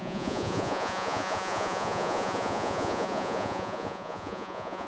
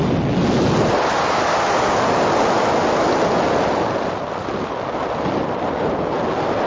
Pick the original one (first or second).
second